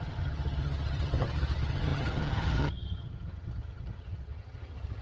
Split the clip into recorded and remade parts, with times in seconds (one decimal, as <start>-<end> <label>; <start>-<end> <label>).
0.0-5.0 remade